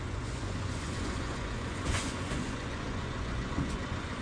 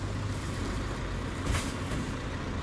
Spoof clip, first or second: first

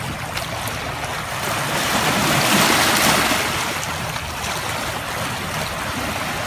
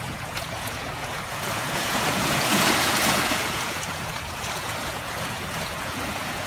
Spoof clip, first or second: second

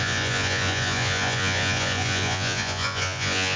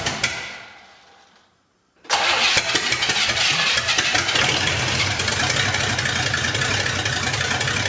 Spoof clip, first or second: first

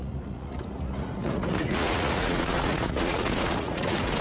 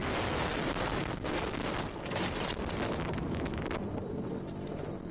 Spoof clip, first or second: first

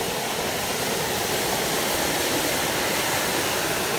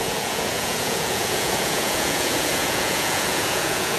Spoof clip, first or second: second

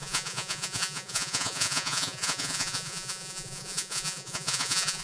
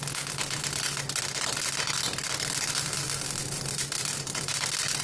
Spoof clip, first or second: first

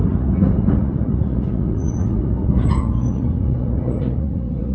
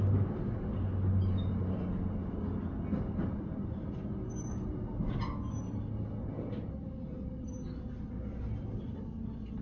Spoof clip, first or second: first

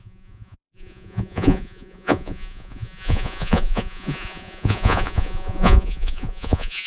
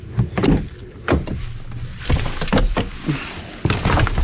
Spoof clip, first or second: first